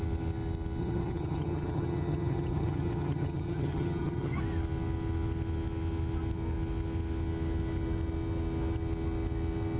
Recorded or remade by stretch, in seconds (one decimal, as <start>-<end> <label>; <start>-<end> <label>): 0.0-0.8 recorded; 0.8-4.4 remade; 4.4-9.8 recorded